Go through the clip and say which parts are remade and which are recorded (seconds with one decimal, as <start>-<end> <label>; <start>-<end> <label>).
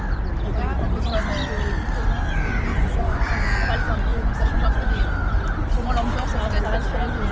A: 0.0-2.7 recorded; 2.7-3.3 remade; 3.3-4.1 recorded; 4.1-5.1 remade; 5.1-7.3 recorded